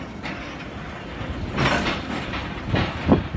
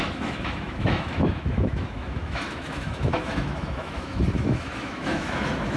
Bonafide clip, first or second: first